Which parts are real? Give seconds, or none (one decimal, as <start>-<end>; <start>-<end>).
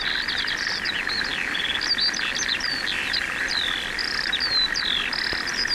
0.0-4.0; 5.1-5.7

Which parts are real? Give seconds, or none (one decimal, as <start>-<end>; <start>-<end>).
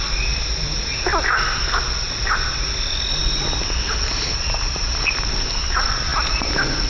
0.0-6.9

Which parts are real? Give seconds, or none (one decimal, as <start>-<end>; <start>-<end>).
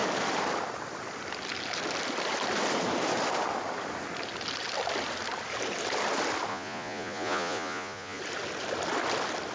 0.0-6.5; 8.2-9.5